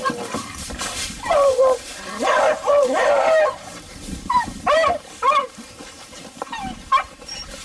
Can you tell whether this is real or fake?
fake